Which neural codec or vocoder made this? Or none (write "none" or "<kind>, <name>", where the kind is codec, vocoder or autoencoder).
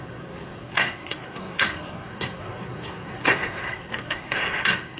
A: codec, SNAC